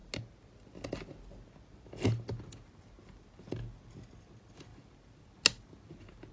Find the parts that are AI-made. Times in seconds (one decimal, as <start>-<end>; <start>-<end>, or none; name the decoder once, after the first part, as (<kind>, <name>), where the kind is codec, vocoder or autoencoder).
none